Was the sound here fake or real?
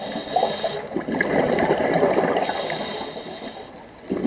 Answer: real